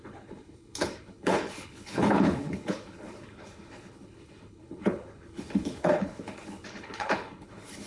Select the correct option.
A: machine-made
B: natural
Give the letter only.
A